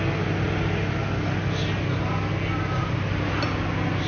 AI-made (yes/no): no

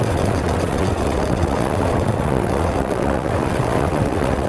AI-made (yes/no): yes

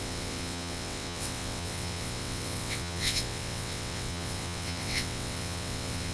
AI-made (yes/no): yes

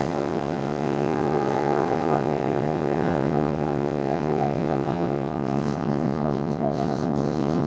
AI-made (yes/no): yes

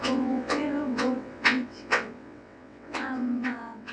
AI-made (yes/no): yes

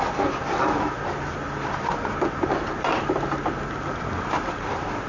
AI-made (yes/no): no